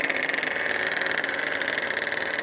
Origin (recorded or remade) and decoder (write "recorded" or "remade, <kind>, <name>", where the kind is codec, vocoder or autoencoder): recorded